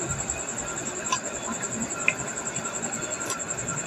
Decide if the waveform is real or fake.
real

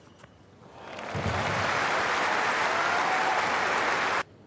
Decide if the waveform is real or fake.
real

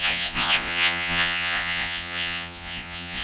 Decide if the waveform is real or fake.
fake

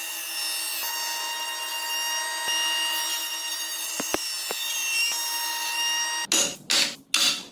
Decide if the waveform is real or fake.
real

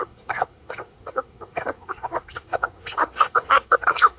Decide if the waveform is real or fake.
fake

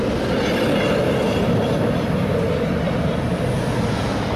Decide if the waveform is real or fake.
real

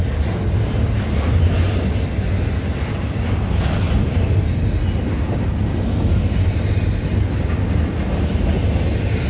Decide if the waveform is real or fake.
real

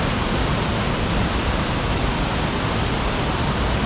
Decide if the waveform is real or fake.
real